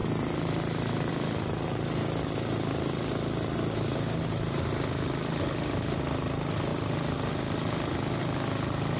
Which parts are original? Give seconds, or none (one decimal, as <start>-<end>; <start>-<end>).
0.0-9.0